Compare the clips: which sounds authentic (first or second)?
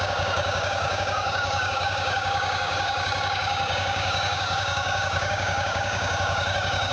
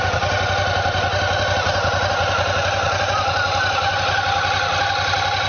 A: second